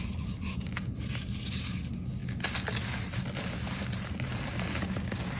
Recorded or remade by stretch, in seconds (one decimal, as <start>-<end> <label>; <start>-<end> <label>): 0.0-5.4 recorded